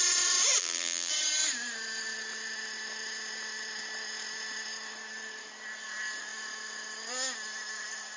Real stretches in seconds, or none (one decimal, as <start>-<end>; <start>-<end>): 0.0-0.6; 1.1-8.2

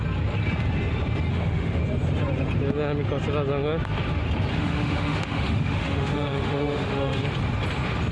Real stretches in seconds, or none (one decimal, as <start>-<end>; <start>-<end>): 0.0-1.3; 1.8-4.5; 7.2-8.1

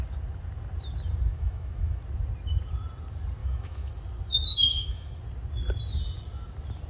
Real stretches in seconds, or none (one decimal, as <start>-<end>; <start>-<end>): 0.0-1.3; 2.0-3.4; 3.9-4.5; 5.2-6.9

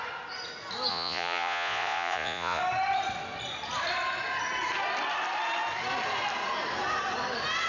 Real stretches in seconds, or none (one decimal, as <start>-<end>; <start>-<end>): 0.0-0.9; 2.6-7.7

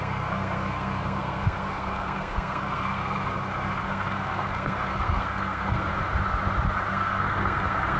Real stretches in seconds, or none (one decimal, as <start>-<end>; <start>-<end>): 5.9-6.9

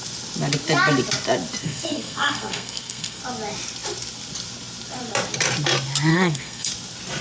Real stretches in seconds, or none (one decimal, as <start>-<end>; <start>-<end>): 0.0-1.6; 3.2-6.1; 6.7-7.2

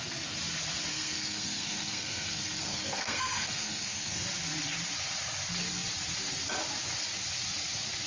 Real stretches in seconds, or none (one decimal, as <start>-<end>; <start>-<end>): 0.0-0.9; 4.2-8.1

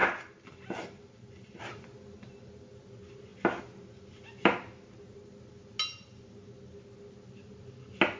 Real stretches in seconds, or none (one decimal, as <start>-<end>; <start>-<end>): 0.0-8.2